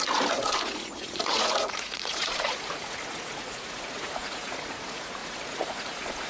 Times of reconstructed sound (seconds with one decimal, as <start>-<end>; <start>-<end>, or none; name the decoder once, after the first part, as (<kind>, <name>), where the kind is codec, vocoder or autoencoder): 0.0-6.3 (vocoder, Vocos)